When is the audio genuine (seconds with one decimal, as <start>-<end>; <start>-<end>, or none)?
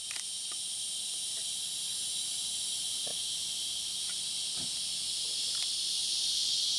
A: 0.0-6.8